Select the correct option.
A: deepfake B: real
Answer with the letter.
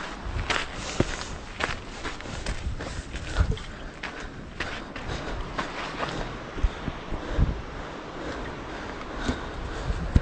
B